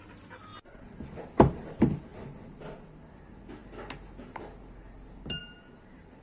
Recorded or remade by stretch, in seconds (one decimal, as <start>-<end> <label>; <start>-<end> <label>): 0.0-6.2 recorded